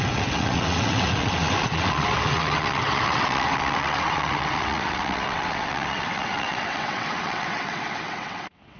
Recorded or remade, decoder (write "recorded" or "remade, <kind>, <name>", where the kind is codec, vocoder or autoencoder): remade, vocoder, WaveNeXt